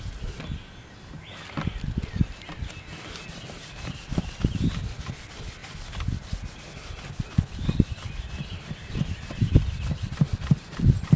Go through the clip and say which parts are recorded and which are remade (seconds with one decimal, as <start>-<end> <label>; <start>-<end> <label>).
0.0-11.2 recorded